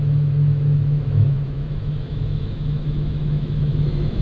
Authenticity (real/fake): fake